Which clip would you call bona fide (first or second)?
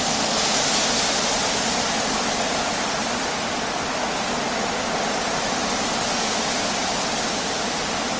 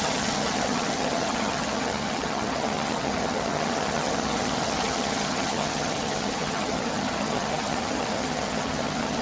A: first